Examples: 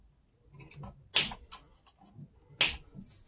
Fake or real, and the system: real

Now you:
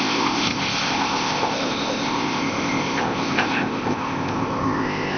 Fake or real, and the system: fake, codec, ZipCodec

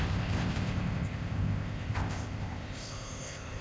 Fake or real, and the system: fake, codec, ZipCodec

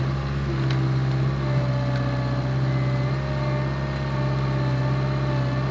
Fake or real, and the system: real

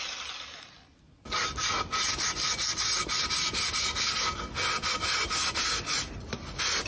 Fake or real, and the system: real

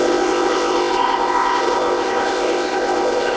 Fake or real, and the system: fake, codec, ZipCodec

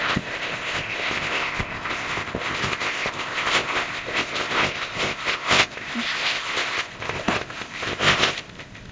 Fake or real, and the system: fake, codec, ZipCodec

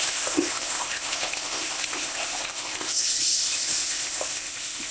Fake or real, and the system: fake, codec, ZipCodec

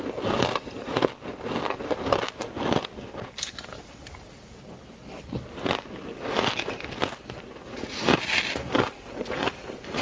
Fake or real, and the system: real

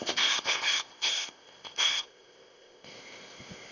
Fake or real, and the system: fake, codec, ZipCodec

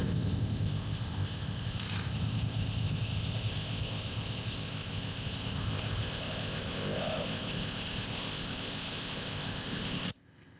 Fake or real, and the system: fake, codec, ZipCodec